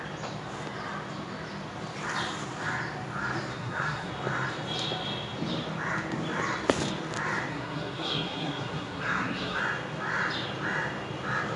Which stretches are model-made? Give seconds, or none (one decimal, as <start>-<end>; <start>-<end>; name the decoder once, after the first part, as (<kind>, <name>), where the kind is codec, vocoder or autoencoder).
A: 3.5-4.1 (codec, SNAC); 7.5-9.6